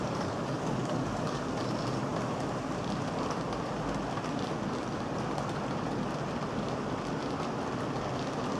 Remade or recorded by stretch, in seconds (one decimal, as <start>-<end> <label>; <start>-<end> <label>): 0.0-1.4 remade; 1.4-8.6 recorded